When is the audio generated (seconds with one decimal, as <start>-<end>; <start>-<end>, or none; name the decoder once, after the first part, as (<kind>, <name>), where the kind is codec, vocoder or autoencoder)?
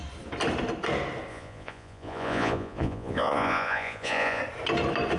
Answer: 1.3-4.4 (vocoder, Vocos)